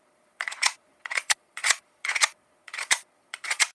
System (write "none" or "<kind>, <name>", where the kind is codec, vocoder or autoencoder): vocoder, Vocos